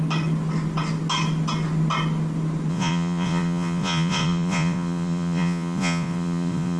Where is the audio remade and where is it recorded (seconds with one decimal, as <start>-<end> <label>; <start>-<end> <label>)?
0.0-2.7 recorded; 2.7-6.8 remade